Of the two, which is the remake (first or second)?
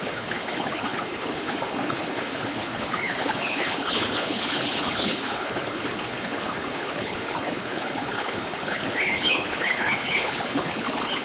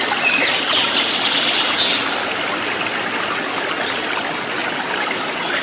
first